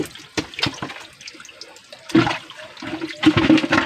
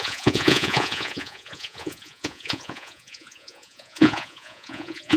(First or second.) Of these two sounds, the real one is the first